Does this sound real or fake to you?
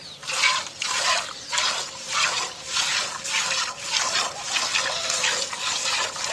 real